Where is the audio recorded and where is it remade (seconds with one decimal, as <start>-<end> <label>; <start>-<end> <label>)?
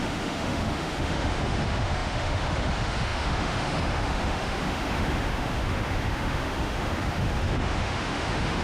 0.0-8.6 remade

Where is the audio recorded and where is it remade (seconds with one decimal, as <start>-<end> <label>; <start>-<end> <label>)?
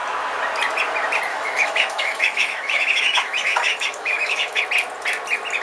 0.0-1.3 recorded; 1.3-4.6 remade; 4.6-5.6 recorded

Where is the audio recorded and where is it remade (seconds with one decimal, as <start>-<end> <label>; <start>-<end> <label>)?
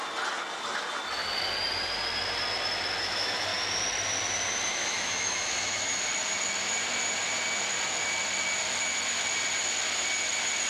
0.0-3.0 recorded; 3.0-3.5 remade; 3.5-4.7 recorded; 4.7-5.9 remade; 5.9-10.7 recorded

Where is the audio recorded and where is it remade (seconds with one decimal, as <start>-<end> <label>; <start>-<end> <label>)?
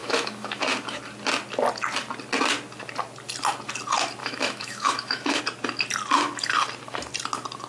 0.0-0.6 remade; 0.6-4.2 recorded; 4.2-5.4 remade; 5.4-7.7 recorded